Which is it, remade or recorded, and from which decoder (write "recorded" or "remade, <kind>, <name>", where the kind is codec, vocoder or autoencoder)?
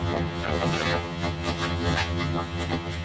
remade, vocoder, HiFi-GAN